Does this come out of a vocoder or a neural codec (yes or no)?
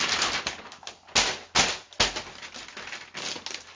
no